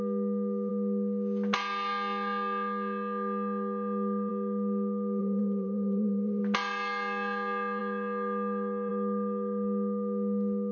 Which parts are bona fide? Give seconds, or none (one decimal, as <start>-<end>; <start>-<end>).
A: 0.0-5.2; 6.4-10.7